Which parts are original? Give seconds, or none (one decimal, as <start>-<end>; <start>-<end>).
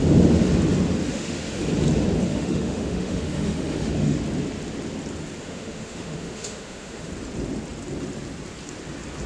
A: 0.0-1.1; 1.7-2.3; 4.2-5.4; 7.1-9.3